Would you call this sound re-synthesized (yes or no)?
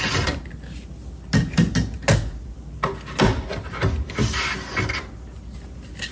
no